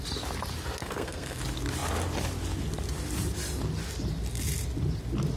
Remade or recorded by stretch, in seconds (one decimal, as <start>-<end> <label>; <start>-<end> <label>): 0.0-0.8 recorded; 0.8-1.4 remade; 1.4-5.4 recorded